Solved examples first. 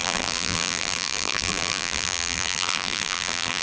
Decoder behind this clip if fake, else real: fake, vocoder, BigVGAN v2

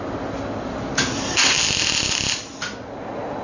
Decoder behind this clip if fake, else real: real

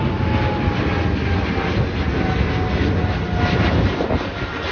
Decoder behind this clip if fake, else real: real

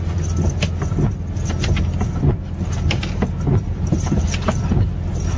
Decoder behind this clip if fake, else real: real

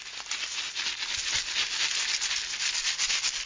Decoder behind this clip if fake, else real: real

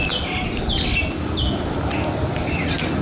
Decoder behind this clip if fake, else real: real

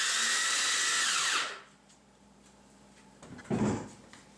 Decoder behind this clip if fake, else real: real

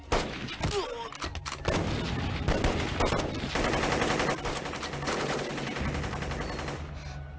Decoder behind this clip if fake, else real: real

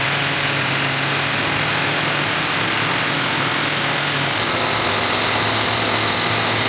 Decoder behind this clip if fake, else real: real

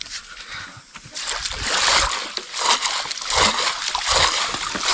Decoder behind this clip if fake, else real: real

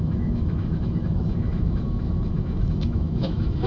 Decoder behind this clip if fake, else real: fake, autoencoder, DAC-VAE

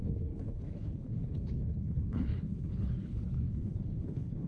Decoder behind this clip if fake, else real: fake, codec, HILCodec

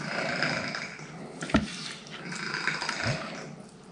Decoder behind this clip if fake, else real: real